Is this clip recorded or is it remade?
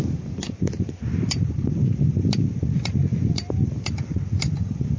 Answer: recorded